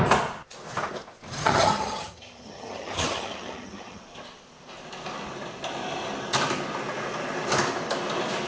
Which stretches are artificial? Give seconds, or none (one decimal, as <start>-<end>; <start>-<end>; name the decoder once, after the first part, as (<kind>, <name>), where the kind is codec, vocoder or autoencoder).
1.4-4.0 (vocoder, HiFi-GAN)